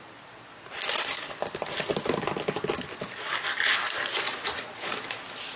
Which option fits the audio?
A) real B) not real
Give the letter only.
A